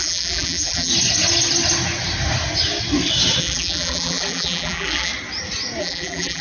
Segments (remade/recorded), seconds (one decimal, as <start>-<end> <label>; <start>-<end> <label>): 0.0-0.9 remade; 0.9-3.4 recorded; 3.4-5.1 remade; 5.1-5.8 recorded; 5.8-6.4 remade